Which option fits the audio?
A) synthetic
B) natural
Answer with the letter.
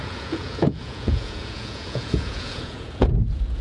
A